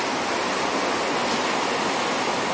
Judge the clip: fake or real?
real